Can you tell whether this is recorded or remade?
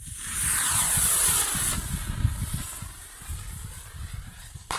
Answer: remade